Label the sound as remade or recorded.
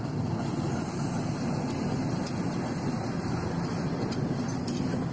recorded